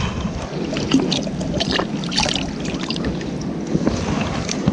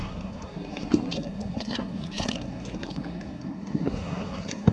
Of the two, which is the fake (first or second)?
second